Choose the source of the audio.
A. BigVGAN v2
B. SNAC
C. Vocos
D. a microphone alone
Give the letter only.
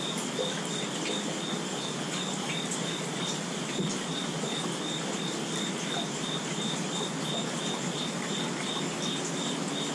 D